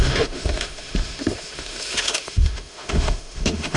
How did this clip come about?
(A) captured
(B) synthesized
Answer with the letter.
B